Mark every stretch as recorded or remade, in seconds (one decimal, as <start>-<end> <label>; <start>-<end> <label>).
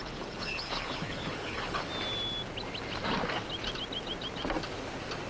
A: 0.0-1.9 remade; 1.9-5.3 recorded